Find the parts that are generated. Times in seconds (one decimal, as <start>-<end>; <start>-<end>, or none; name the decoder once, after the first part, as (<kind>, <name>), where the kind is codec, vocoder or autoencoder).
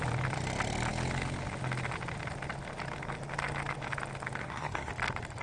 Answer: 4.4-4.9 (codec, SNAC)